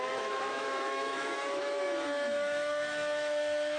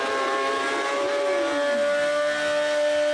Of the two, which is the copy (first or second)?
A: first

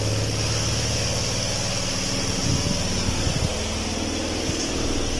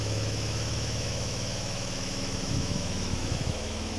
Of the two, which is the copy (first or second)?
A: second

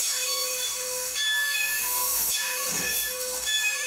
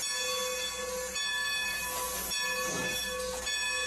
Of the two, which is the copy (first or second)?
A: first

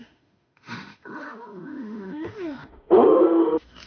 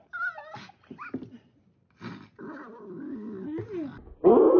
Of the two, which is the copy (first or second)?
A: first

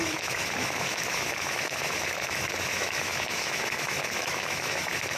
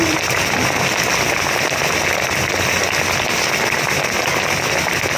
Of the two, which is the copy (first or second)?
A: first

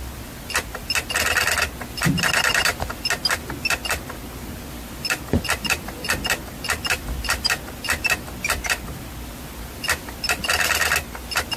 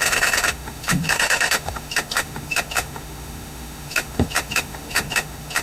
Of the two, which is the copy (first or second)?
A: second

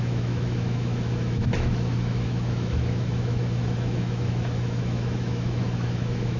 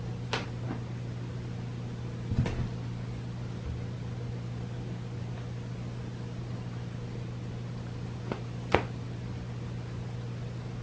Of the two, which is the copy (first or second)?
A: first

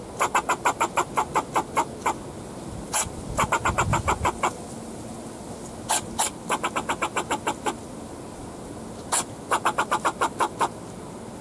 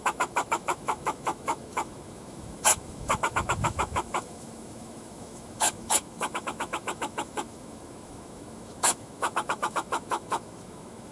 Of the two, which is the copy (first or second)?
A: second